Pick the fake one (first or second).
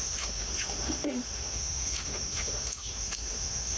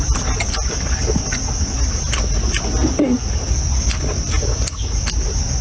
first